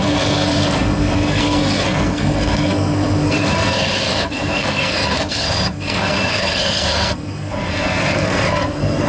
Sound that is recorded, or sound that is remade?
remade